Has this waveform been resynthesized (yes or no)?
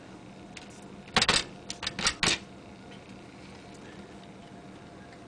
no